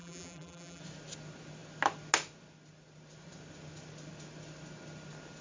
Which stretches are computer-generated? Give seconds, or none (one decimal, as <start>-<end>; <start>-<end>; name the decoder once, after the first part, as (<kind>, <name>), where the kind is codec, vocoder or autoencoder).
0.0-0.8 (vocoder, BigVGAN v2)